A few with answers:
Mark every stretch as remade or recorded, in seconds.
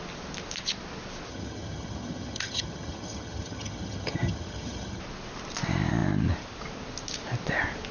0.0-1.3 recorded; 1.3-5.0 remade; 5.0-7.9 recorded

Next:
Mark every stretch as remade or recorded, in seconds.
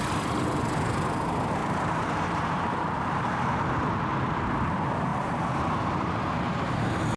0.0-1.6 recorded; 1.6-3.9 remade; 3.9-5.1 recorded; 5.1-7.2 remade